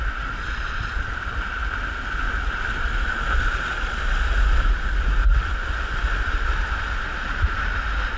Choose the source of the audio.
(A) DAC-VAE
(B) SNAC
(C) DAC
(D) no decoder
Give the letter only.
D